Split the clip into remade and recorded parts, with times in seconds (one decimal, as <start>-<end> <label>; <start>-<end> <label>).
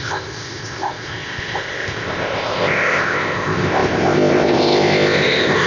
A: 0.0-5.7 remade